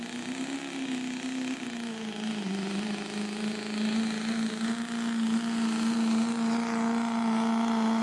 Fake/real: real